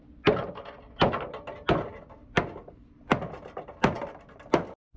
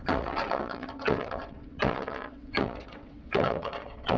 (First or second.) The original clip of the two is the first